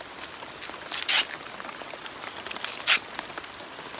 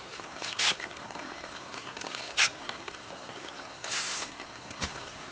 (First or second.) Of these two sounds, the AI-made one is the second